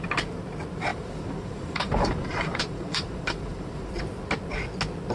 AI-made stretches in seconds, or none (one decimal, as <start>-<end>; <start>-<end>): 0.9-3.9